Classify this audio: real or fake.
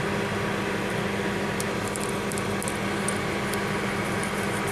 real